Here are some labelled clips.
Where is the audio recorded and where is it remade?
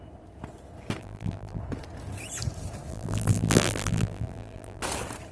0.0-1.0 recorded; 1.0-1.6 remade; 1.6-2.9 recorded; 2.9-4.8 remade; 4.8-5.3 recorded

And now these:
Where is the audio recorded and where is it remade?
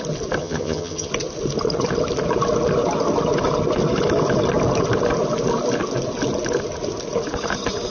0.0-0.4 recorded; 0.4-1.1 remade; 1.1-7.9 recorded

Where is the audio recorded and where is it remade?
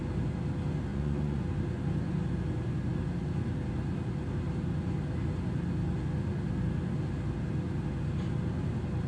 0.0-0.9 recorded; 0.9-1.4 remade; 1.4-9.1 recorded